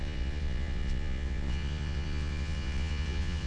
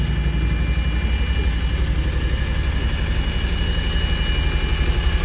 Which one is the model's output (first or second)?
first